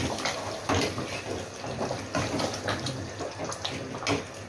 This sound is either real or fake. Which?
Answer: real